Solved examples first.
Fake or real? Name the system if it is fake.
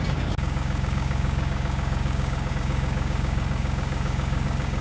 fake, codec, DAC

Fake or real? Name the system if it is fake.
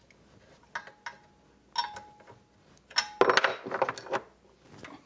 real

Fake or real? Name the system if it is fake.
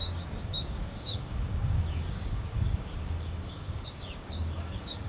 fake, codec, DAC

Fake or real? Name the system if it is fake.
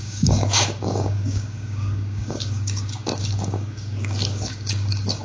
fake, codec, DAC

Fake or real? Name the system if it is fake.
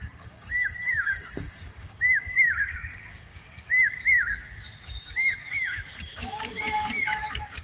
fake, codec, DAC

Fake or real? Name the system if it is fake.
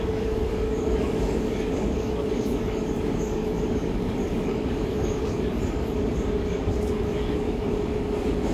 fake, codec, DAC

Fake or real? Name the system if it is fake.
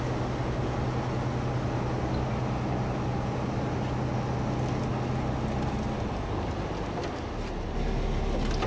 real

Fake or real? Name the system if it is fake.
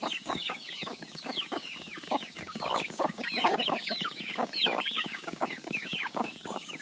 fake, codec, DAC